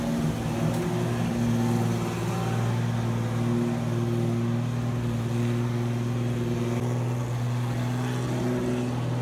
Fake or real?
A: real